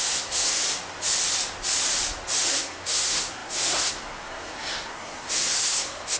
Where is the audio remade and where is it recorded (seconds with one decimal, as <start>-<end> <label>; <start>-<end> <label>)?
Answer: 0.0-0.6 remade; 0.6-2.5 recorded; 2.5-6.2 remade